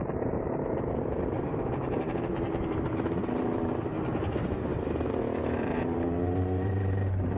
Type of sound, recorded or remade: remade